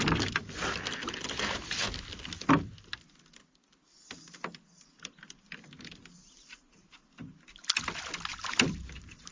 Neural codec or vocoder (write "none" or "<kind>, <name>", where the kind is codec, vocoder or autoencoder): none